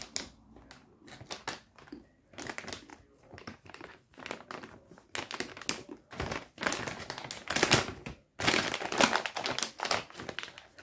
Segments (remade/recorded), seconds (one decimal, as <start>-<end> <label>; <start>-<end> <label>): 0.0-2.9 recorded; 2.9-4.2 remade; 4.2-10.8 recorded